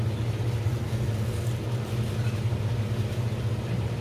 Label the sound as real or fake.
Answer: real